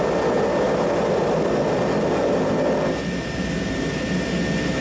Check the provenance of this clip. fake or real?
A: real